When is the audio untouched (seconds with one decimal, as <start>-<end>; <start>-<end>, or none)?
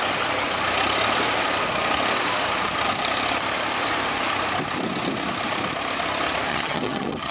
0.0-6.5